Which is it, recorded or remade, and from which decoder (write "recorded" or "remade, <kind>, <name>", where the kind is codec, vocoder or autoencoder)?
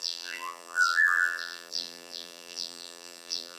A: remade, vocoder, BigVGAN v2